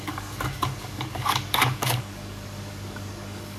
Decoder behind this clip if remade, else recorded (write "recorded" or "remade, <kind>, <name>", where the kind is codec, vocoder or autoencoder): remade, codec, DAC